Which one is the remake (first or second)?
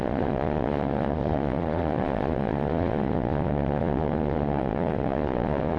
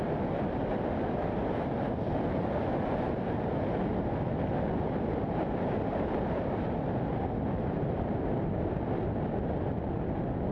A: first